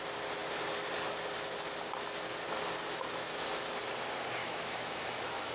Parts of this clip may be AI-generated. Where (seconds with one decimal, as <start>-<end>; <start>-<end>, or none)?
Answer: 2.9-3.6; 4.4-5.5